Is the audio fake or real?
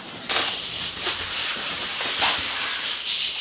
fake